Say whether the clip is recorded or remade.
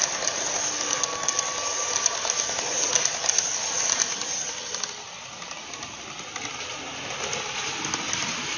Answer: recorded